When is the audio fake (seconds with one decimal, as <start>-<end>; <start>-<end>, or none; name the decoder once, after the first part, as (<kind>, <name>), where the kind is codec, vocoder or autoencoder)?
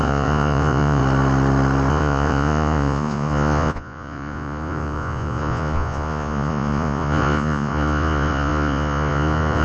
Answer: 0.0-1.0 (vocoder, Vocos); 1.9-9.6